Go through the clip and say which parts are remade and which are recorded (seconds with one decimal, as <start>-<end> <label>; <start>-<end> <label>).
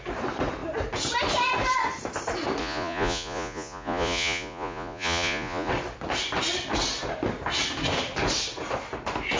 0.0-2.6 recorded; 2.6-5.7 remade; 5.7-9.4 recorded